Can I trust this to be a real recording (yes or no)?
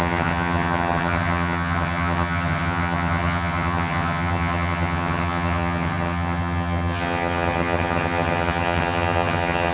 no